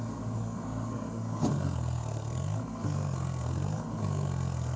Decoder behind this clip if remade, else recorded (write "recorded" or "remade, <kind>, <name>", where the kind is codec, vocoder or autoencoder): remade, codec, SNAC